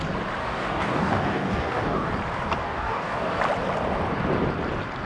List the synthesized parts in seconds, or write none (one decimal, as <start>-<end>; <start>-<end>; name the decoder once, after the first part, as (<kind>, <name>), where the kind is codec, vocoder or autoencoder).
0.4-2.1 (codec, DAC); 2.6-3.4